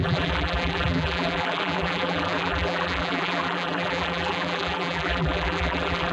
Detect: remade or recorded remade